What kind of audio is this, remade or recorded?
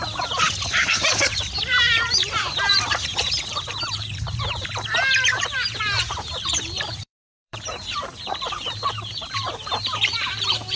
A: remade